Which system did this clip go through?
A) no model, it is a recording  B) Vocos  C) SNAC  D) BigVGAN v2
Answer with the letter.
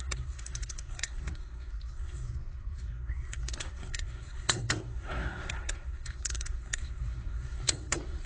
C